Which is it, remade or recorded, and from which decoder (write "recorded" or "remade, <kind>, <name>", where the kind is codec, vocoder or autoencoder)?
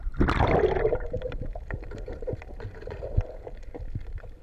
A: remade, vocoder, BigVGAN v2